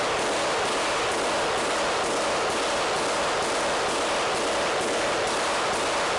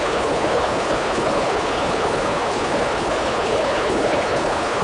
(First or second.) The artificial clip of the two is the second